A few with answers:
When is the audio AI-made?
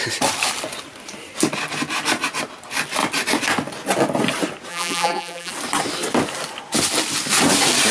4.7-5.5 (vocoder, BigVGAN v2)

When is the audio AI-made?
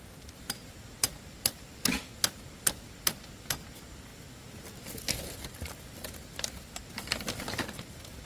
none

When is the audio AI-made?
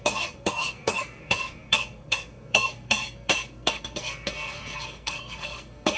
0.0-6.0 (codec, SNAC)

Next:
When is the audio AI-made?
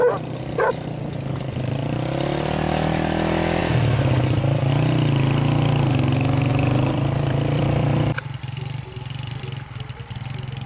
3.6-4.7 (vocoder, BigVGAN v2); 6.5-9.4